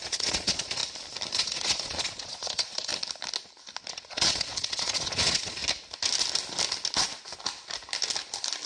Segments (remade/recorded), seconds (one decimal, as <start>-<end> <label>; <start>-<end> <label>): 0.0-0.8 remade; 0.8-1.3 recorded; 1.3-2.9 remade; 2.9-3.8 recorded; 3.8-5.6 remade; 5.6-8.7 recorded